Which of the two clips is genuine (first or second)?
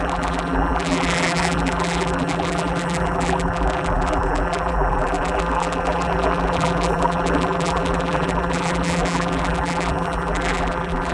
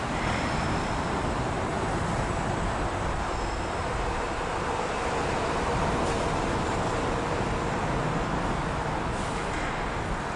second